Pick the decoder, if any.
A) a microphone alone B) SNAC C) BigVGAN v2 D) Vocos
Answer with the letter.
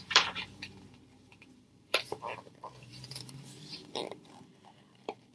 C